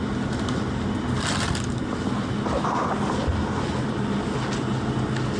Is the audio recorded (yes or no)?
yes